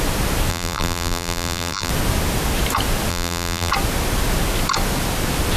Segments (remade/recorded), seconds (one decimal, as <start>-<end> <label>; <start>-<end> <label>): 0.0-0.5 recorded; 0.5-1.9 remade; 1.9-3.1 recorded; 3.1-3.7 remade; 3.7-5.6 recorded